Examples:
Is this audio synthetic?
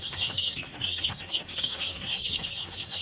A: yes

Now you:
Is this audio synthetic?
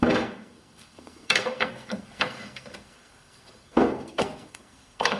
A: yes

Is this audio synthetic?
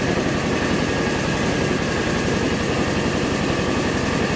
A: no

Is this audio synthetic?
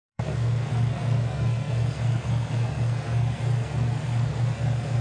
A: yes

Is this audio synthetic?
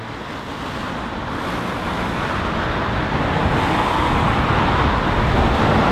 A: no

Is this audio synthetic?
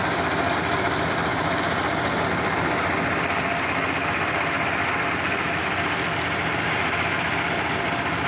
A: no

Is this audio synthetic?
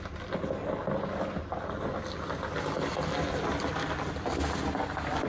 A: no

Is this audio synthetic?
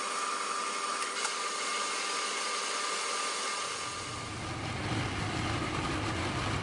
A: no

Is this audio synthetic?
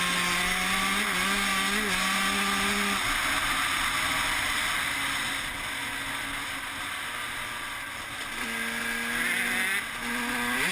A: no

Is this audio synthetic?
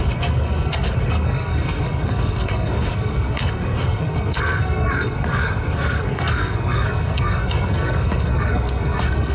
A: yes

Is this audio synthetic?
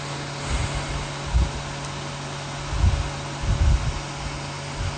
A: no